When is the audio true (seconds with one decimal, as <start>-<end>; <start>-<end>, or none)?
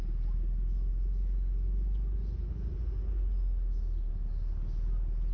0.0-5.3